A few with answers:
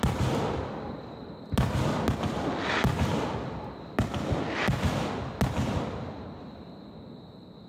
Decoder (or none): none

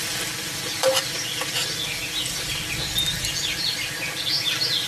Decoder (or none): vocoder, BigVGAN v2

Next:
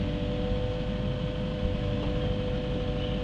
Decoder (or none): none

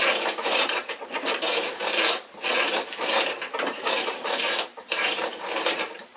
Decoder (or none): vocoder, BigVGAN v2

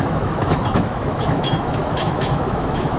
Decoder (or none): autoencoder, DAC-VAE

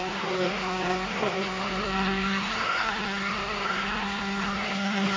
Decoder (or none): codec, SNAC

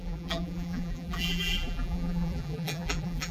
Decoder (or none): vocoder, BigVGAN v2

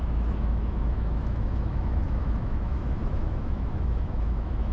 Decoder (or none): autoencoder, DAC-VAE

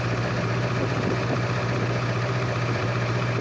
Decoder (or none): vocoder, BigVGAN v2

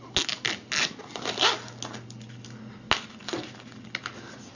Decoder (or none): none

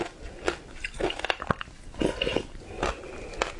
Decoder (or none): none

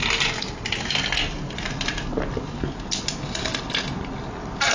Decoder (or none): none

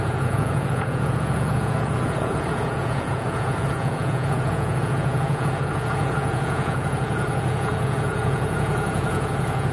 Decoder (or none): vocoder, Vocos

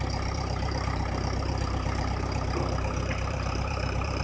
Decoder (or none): vocoder, BigVGAN v2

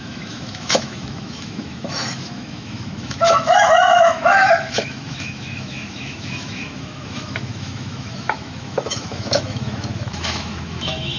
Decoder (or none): autoencoder, DAC-VAE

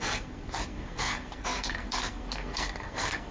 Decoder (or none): codec, SNAC